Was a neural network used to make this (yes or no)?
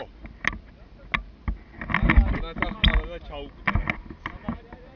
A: no